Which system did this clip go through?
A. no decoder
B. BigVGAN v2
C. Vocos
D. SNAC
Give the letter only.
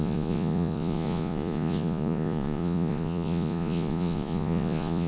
C